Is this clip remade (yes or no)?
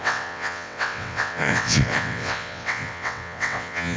yes